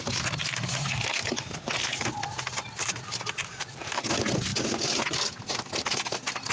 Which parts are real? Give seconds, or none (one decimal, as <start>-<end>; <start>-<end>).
0.0-3.4; 4.0-6.5